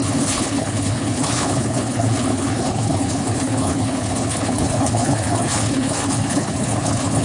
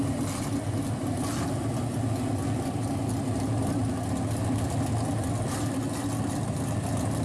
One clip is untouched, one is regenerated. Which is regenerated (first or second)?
first